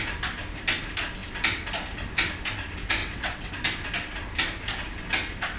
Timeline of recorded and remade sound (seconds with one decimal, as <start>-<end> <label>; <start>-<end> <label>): 0.0-3.0 recorded; 3.0-3.5 remade; 3.5-5.6 recorded